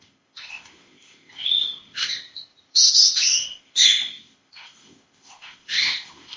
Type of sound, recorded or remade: remade